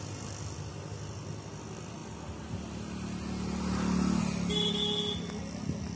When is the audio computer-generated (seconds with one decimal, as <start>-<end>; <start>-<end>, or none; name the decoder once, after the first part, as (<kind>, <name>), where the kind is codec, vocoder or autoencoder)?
none